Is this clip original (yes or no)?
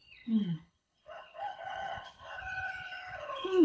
no